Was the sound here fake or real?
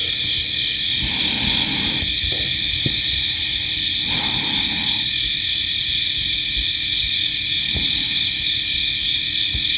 real